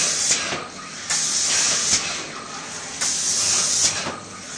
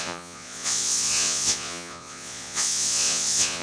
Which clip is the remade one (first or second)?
second